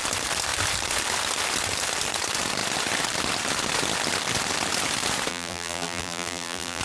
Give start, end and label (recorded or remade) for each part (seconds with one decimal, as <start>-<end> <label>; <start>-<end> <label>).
0.0-5.3 recorded; 5.3-6.8 remade